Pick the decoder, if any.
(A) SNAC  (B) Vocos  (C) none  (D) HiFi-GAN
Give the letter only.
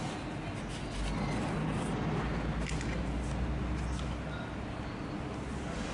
C